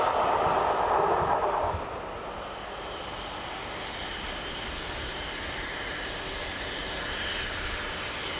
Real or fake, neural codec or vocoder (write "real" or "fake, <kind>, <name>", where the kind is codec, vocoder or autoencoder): real